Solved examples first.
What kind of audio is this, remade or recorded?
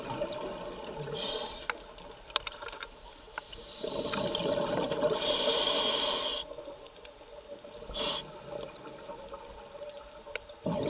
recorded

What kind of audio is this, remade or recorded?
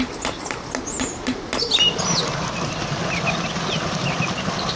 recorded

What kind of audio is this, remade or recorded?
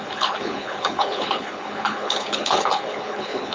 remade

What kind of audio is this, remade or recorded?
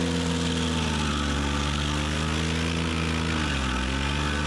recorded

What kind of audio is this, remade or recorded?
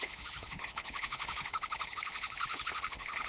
remade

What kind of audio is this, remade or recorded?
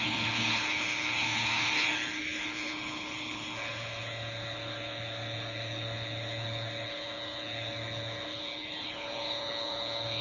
remade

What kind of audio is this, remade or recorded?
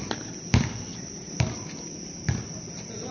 recorded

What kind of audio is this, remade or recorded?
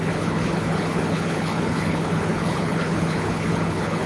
remade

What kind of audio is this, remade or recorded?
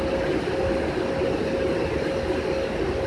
recorded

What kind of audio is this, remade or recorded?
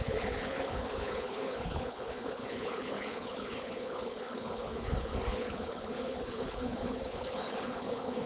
remade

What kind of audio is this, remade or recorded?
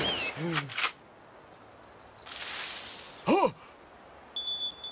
recorded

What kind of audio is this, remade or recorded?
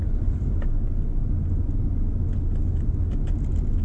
recorded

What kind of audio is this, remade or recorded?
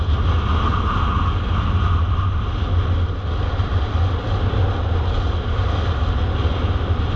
recorded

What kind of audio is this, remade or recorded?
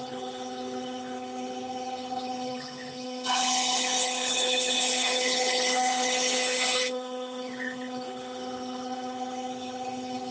remade